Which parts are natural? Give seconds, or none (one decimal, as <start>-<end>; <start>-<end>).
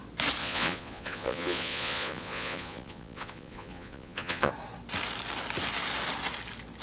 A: 0.0-0.4; 4.5-6.8